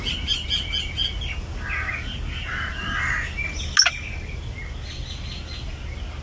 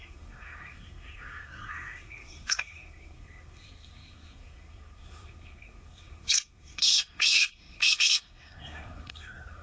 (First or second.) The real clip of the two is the first